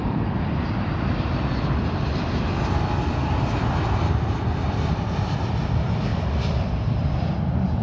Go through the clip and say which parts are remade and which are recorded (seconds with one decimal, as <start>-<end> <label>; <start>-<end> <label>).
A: 0.0-7.8 recorded